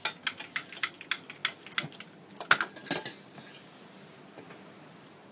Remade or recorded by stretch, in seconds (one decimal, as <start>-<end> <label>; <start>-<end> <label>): 0.0-5.3 recorded